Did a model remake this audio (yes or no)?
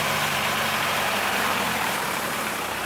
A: yes